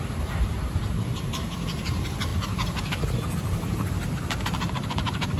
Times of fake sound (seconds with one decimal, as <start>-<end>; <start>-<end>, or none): 0.0-5.4